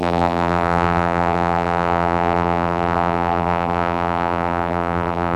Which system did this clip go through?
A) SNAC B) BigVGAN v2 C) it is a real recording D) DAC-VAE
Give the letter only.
B